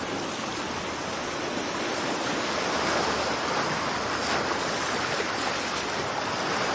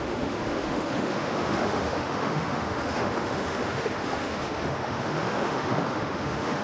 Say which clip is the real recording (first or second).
first